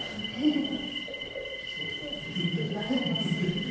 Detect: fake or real fake